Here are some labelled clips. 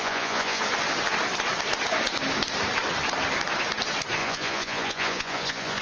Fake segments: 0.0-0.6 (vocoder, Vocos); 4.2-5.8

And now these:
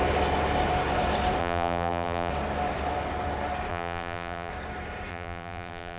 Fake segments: 1.4-2.3 (vocoder, BigVGAN v2); 3.7-4.5; 5.1-6.0

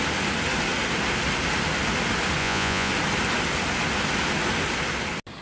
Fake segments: 2.4-2.9 (vocoder, Vocos)